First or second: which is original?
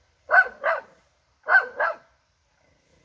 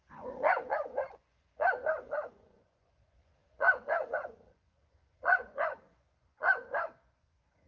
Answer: first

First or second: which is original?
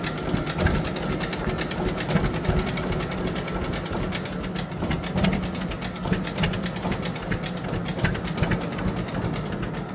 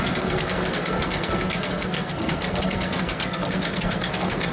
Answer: first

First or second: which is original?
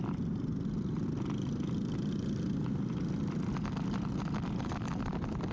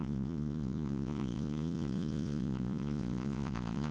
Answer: first